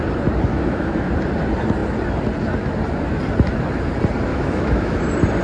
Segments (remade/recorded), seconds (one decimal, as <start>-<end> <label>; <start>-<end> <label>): 0.0-0.5 recorded; 0.5-1.1 remade; 1.1-4.3 recorded; 4.3-5.0 remade; 5.0-5.4 recorded